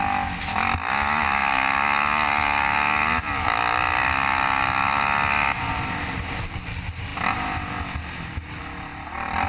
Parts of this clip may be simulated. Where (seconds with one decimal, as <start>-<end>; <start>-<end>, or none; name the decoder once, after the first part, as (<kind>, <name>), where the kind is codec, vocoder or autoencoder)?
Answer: none